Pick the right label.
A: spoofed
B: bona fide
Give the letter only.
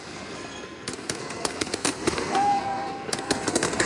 A